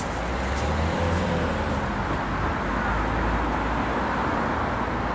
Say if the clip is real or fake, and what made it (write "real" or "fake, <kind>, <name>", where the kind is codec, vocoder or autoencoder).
real